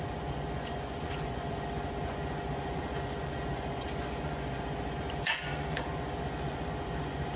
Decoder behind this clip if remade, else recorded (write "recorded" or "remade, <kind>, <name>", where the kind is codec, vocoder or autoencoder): remade, vocoder, Vocos